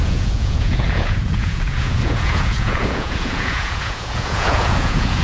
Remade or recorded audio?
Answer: remade